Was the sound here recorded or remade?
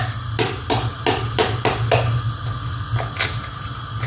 recorded